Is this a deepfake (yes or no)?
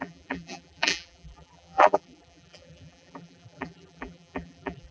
yes